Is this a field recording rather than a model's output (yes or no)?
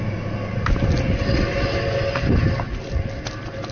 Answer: yes